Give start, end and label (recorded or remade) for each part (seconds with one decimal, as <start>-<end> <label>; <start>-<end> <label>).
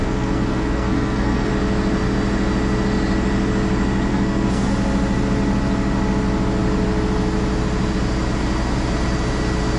0.0-1.5 remade; 1.5-4.1 recorded; 4.1-4.7 remade; 4.7-9.8 recorded